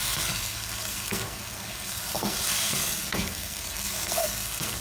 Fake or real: fake